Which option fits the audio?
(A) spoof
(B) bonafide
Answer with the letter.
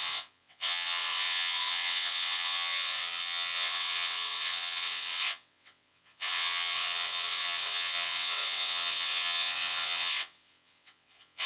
A